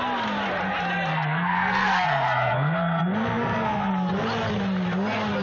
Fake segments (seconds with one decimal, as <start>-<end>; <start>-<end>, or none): 1.1-3.9